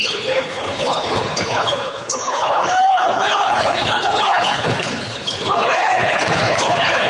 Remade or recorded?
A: remade